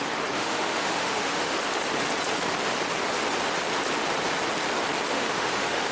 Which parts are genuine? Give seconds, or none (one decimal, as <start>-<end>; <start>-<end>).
1.6-5.1